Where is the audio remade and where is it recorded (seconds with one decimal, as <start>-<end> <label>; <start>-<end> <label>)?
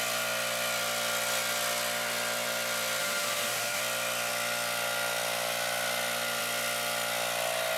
0.0-3.0 recorded; 3.0-3.8 remade; 3.8-7.8 recorded